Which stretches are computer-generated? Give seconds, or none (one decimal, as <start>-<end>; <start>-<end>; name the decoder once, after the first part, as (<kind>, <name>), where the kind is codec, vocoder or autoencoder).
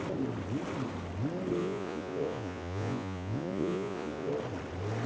1.6-4.3 (vocoder, Vocos)